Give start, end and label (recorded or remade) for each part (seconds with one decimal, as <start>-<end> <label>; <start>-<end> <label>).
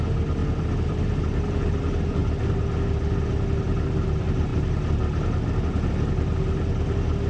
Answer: 0.0-7.3 recorded